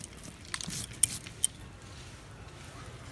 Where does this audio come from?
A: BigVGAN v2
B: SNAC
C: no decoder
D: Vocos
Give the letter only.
C